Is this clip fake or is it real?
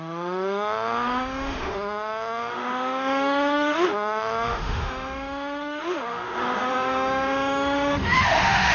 fake